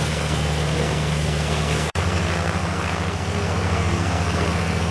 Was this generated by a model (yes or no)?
yes